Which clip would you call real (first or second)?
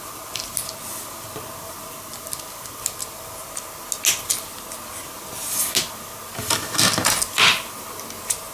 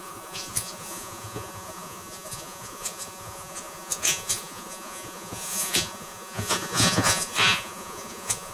first